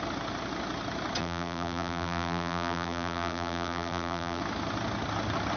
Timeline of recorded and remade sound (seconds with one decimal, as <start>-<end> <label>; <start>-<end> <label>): 0.0-1.2 recorded; 1.2-4.4 remade; 4.4-5.6 recorded